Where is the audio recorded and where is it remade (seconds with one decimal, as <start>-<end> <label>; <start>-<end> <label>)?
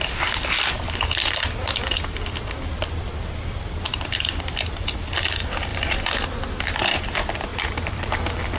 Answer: 0.0-5.7 recorded; 5.7-7.0 remade; 7.0-7.5 recorded; 7.5-8.1 remade; 8.1-8.6 recorded